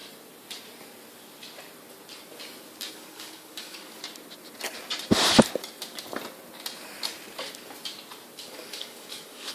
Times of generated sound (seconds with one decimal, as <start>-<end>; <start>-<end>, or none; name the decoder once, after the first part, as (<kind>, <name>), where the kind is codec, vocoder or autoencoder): 2.9-4.0 (codec, DAC); 8.4-9.5